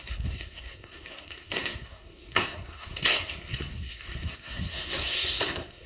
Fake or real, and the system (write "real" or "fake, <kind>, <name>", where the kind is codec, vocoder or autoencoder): fake, codec, SNAC